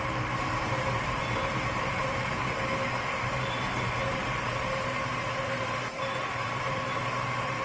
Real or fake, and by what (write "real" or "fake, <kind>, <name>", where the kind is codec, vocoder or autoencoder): fake, vocoder, BigVGAN v2